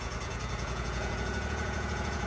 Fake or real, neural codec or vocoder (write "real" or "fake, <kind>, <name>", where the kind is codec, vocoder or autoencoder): fake, vocoder, Vocos